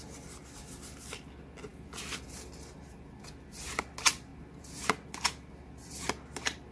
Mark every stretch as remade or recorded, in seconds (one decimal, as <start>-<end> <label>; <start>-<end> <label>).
0.0-6.7 recorded